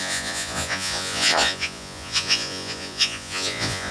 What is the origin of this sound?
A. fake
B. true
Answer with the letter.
A